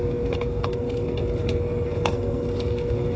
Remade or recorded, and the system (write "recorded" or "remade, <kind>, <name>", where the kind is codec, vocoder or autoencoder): remade, codec, SNAC